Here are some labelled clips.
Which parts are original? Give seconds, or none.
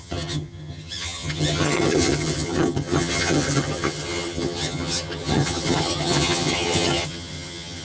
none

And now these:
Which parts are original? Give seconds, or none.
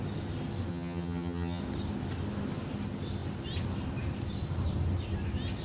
0.0-0.7; 1.6-5.6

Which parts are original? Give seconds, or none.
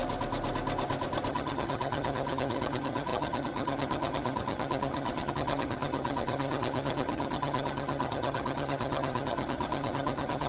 0.0-1.3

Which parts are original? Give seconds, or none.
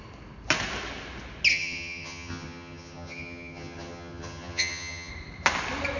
0.0-1.5; 5.1-6.0